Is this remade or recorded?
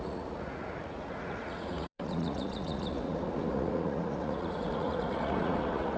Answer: remade